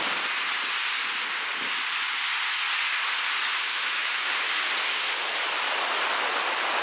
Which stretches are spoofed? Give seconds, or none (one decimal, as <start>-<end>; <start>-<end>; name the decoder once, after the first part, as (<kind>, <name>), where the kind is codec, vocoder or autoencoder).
3.7-4.3 (autoencoder, DAC-VAE)